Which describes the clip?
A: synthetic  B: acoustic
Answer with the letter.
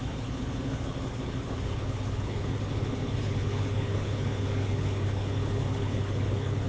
A